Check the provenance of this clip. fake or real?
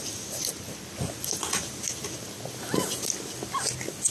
real